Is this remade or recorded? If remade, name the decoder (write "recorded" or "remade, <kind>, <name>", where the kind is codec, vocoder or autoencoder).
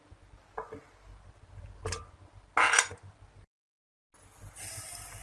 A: recorded